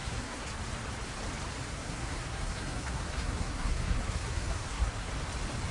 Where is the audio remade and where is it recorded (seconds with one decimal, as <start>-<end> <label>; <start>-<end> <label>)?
0.0-0.5 remade; 0.5-1.7 recorded; 1.7-5.1 remade; 5.1-5.7 recorded